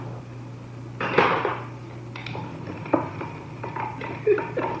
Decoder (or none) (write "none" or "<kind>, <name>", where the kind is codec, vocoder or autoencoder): none